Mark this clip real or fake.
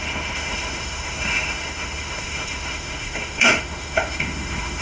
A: fake